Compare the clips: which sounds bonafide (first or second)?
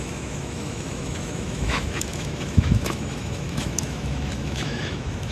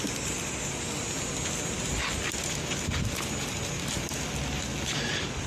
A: second